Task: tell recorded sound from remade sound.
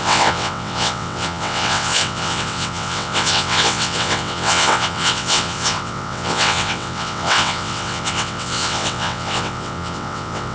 remade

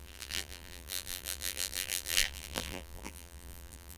remade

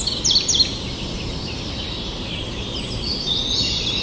recorded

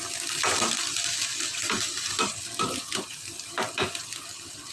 recorded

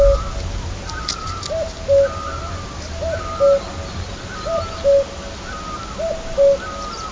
recorded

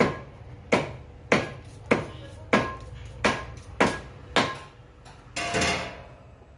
recorded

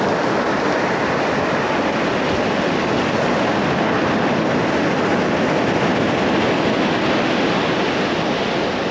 recorded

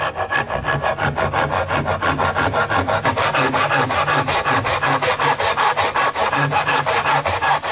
recorded